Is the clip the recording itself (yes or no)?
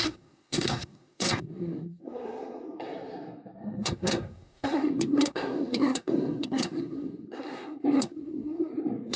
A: no